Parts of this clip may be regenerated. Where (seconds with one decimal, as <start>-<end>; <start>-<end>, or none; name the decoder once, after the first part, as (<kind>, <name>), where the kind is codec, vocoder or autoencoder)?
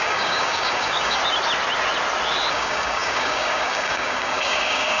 0.0-1.2 (codec, DAC); 2.5-5.0